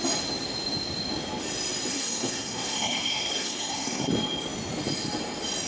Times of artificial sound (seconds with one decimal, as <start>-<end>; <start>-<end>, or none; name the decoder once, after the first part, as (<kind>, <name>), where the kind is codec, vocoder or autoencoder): 1.9-4.1 (codec, SNAC)